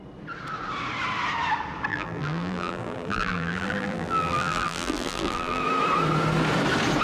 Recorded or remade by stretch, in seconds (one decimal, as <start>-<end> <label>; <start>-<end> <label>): 0.0-1.9 recorded; 1.9-5.6 remade; 5.6-7.0 recorded